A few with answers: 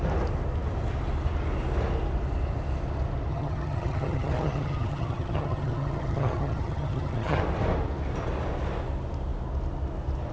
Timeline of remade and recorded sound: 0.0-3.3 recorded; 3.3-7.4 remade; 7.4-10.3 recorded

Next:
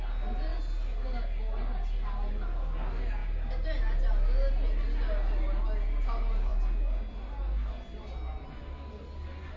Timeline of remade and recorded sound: 0.0-9.6 recorded

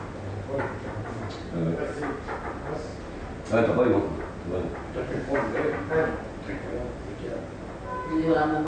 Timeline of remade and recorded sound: 0.0-8.7 recorded

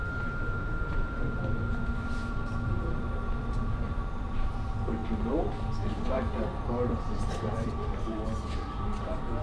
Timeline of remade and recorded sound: 0.0-5.0 remade; 5.0-7.4 recorded; 7.4-9.4 remade

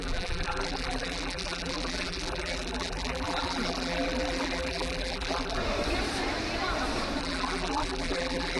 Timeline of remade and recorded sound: 0.0-5.6 remade; 5.6-7.2 recorded; 7.2-8.6 remade